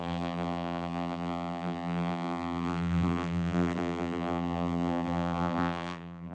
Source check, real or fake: fake